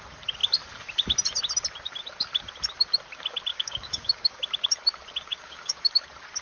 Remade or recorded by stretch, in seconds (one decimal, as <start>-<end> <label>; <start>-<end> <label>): 0.0-3.5 recorded; 3.5-4.4 remade; 4.4-5.3 recorded; 5.3-5.9 remade; 5.9-6.4 recorded